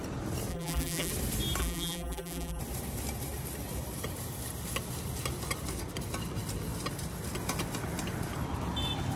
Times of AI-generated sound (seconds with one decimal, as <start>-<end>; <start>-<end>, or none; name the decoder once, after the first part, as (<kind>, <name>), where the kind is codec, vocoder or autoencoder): 0.5-1.1 (vocoder, BigVGAN v2); 1.6-2.6

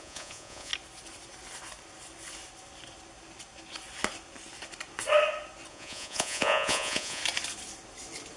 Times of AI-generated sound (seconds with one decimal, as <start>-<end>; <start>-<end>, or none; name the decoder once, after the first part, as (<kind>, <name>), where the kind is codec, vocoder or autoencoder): 0.0-0.7 (vocoder, Vocos); 5.7-7.2